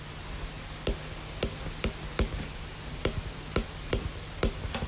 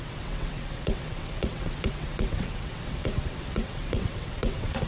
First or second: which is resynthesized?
second